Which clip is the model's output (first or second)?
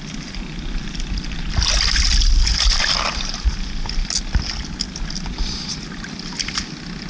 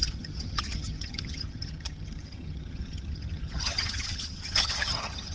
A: second